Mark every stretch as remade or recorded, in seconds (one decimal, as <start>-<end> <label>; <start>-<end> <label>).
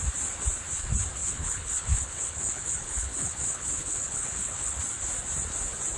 0.0-1.2 recorded; 1.2-4.8 remade; 4.8-6.0 recorded